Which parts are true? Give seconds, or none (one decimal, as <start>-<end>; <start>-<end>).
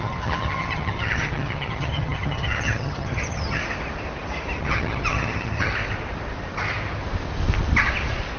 3.6-4.6; 5.7-8.4